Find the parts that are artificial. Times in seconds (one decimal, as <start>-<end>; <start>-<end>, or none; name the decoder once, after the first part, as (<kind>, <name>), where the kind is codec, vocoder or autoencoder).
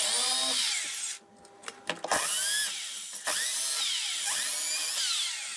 none